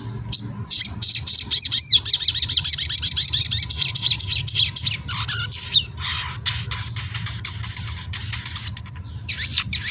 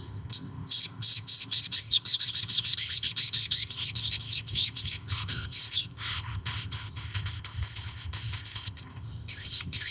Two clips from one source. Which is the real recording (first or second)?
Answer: first